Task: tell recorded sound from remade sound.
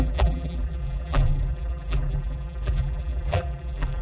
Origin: remade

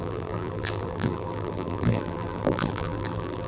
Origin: remade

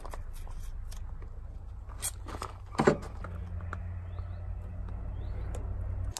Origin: recorded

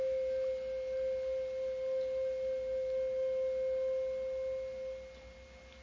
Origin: recorded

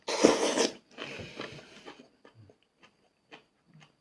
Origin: recorded